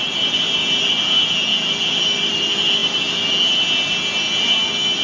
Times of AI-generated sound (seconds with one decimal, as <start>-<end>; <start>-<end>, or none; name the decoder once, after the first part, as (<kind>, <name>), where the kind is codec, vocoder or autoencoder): none